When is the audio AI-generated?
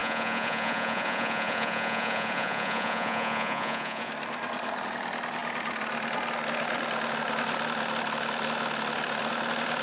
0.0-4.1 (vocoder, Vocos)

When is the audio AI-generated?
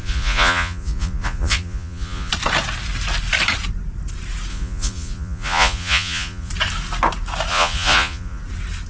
0.0-2.3 (vocoder, Vocos); 4.5-6.5; 7.5-8.4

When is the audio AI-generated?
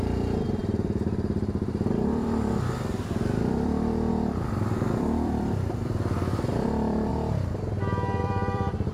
0.0-7.1 (vocoder, BigVGAN v2); 8.2-8.9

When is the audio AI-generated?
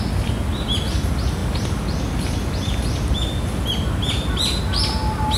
none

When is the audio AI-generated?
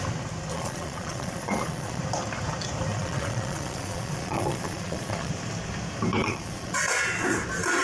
0.5-2.0 (vocoder, Vocos); 2.9-5.3; 6.2-6.9